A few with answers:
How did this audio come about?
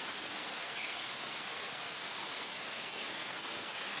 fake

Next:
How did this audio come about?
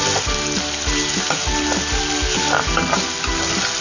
real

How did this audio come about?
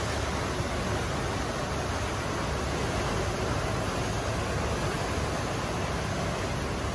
real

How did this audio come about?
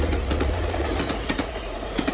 fake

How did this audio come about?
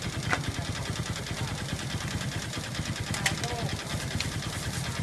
real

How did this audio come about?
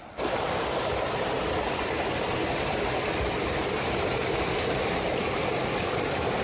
real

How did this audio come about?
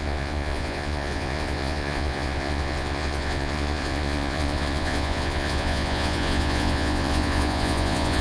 fake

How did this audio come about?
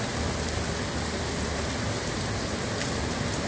real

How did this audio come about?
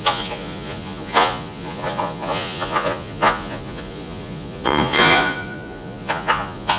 fake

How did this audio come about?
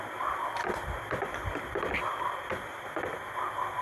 real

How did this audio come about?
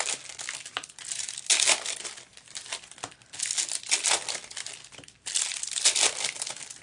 real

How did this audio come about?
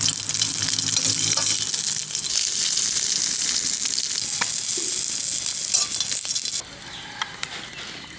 real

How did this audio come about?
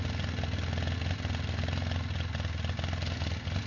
real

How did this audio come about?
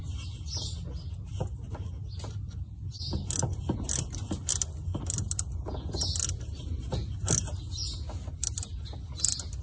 real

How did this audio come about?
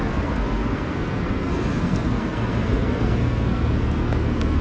fake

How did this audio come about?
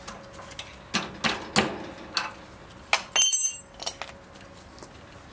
real